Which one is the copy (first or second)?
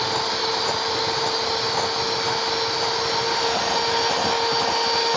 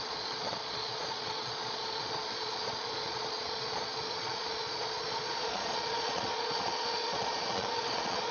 second